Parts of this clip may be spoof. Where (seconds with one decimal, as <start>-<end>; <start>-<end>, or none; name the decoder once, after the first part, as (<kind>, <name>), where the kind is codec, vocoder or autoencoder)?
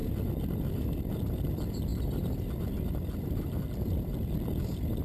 1.0-5.0 (vocoder, BigVGAN v2)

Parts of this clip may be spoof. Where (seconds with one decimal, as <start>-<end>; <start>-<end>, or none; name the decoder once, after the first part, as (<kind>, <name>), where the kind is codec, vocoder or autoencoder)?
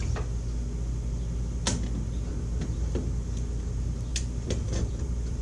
4.1-5.4 (vocoder, BigVGAN v2)